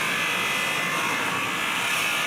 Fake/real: real